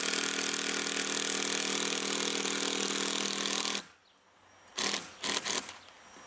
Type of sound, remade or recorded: recorded